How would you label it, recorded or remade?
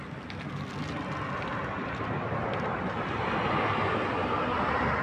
recorded